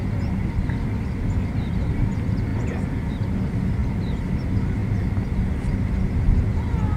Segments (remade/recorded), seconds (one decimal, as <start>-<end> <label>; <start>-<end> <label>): 0.0-7.0 recorded